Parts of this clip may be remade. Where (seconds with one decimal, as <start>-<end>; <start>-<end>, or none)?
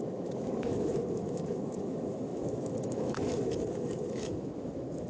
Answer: 0.0-5.1